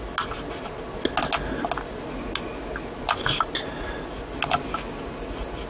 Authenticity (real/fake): real